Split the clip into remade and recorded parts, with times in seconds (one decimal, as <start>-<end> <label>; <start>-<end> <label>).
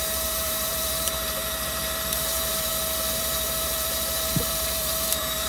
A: 0.0-2.7 remade; 2.7-3.2 recorded; 3.2-5.5 remade